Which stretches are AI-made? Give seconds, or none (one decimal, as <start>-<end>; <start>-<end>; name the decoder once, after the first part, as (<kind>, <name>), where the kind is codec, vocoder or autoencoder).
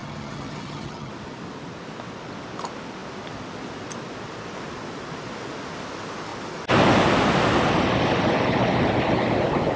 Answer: 0.0-1.1 (vocoder, HiFi-GAN)